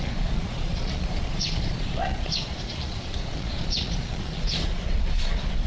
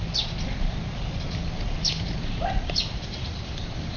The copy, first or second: first